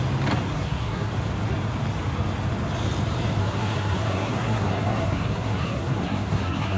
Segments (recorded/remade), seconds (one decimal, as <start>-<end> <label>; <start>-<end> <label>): 0.0-0.5 recorded; 0.5-1.1 remade; 1.1-3.4 recorded; 3.4-6.8 remade